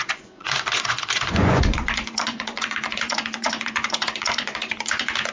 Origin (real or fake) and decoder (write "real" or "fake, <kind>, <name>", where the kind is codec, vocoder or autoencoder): fake, vocoder, Vocos